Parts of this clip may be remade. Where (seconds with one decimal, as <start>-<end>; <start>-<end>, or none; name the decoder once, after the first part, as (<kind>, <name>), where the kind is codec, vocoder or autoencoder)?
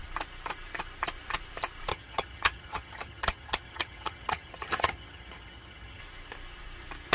1.9-6.0 (vocoder, HiFi-GAN)